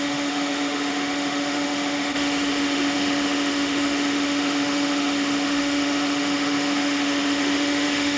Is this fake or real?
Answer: fake